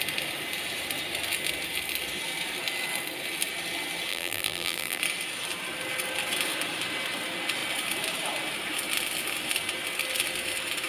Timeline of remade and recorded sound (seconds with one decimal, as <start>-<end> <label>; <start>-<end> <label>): 0.0-4.1 recorded; 4.1-5.0 remade; 5.0-10.9 recorded